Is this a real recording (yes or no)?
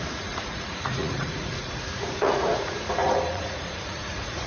no